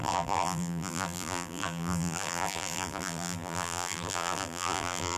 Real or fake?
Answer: fake